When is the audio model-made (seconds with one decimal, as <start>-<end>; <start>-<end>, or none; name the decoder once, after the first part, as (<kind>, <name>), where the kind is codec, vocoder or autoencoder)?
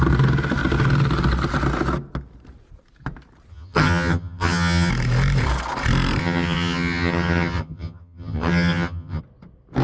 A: 3.5-4.9 (vocoder, HiFi-GAN); 6.2-9.2